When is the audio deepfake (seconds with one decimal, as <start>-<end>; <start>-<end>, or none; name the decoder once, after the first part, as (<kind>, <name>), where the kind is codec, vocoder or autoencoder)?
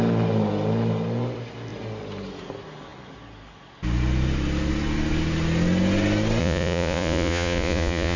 6.4-8.2 (vocoder, Vocos)